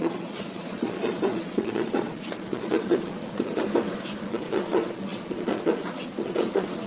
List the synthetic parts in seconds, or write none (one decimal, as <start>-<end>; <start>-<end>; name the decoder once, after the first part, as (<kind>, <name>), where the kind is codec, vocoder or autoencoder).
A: 0.0-3.6 (vocoder, Vocos); 4.2-6.9